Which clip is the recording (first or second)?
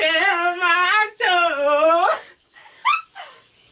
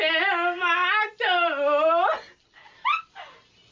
second